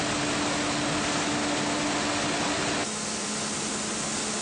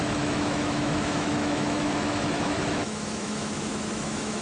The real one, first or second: first